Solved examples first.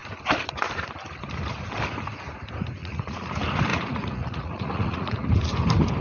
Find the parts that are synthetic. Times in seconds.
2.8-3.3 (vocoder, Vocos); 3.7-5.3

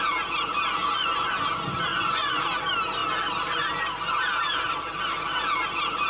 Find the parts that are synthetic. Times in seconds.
0.8-1.4 (vocoder, Vocos); 1.9-2.4

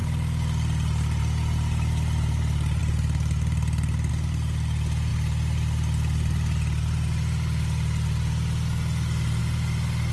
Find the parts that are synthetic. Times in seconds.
none

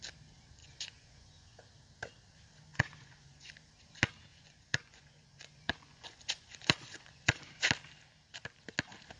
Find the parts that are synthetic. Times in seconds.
0.6-1.6 (vocoder, Vocos); 2.7-3.5; 4.3-7.7

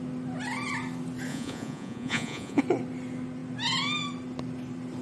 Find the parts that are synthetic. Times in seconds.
1.3-2.6 (vocoder, Vocos)

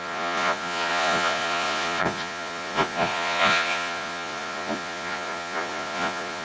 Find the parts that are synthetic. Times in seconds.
0.0-6.4 (vocoder, Vocos)

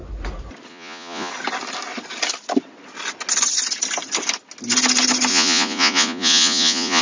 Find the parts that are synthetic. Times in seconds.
0.7-1.3 (vocoder, Vocos); 5.3-7.0